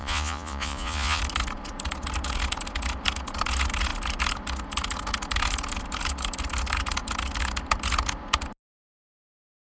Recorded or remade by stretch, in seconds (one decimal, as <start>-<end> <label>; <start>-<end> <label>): 0.0-1.2 remade; 1.2-9.7 recorded